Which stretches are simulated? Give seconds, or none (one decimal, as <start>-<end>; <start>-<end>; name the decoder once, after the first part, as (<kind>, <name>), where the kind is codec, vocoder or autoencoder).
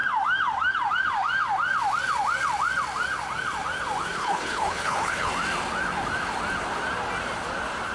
4.2-5.3 (codec, HILCodec)